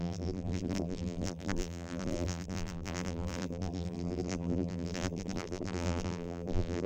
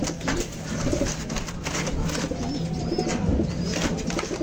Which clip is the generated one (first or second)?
first